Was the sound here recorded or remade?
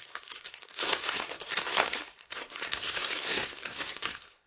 remade